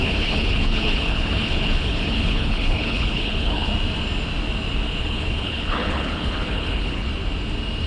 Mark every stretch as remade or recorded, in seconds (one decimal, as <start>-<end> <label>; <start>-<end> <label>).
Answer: 0.0-3.7 remade; 3.7-5.0 recorded; 5.0-7.1 remade; 7.1-7.9 recorded